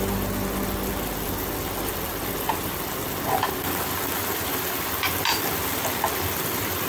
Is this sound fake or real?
real